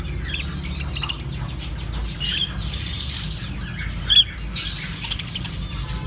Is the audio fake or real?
real